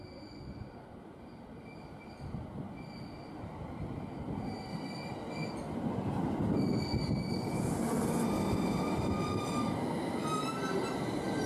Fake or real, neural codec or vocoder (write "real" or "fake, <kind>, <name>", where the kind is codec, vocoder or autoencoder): real